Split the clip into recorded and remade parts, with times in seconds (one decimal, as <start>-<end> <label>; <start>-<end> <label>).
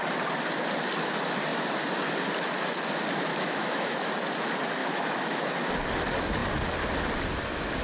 0.0-3.3 recorded; 3.3-4.1 remade; 4.1-4.8 recorded; 4.8-5.5 remade; 5.5-7.8 recorded